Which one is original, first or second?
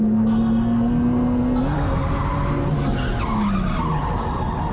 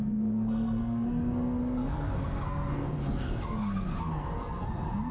first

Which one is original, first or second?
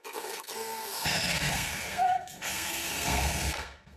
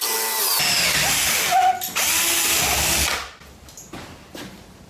second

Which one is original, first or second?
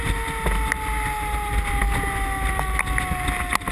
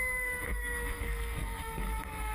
first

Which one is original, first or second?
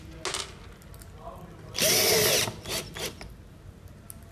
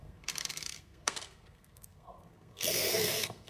first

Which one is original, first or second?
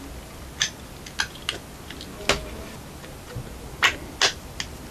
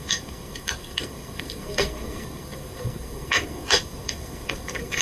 first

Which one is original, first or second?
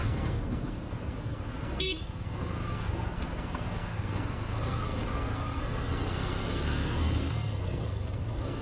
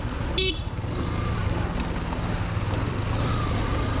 second